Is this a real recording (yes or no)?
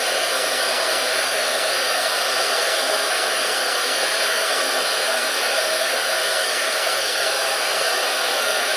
no